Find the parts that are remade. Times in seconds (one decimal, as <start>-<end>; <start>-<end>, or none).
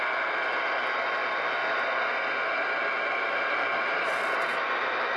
none